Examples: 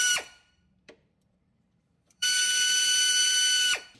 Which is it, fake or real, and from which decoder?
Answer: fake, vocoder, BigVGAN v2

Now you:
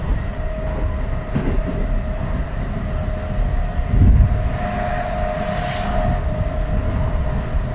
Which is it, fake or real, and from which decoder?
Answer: real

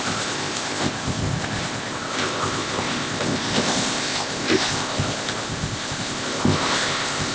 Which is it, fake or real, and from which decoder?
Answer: fake, codec, ZipCodec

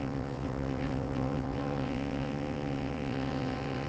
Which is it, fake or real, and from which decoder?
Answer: fake, vocoder, WaveNeXt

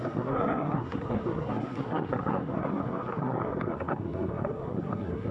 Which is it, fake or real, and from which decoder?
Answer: fake, codec, SNAC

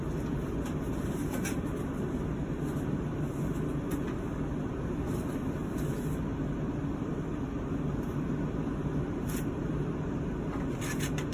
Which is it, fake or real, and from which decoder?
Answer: real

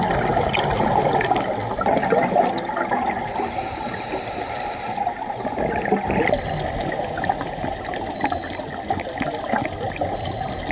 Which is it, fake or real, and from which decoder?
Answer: real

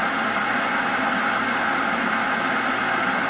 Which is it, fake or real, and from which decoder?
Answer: fake, vocoder, BigVGAN v2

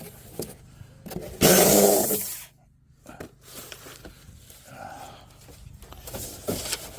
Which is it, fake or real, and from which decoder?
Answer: real